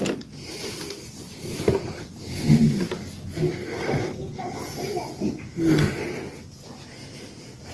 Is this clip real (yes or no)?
yes